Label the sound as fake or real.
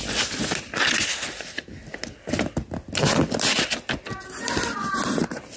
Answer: real